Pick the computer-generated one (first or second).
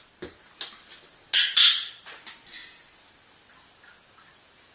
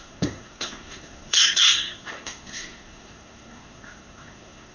second